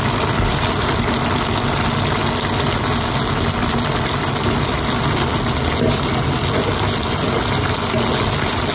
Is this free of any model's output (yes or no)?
yes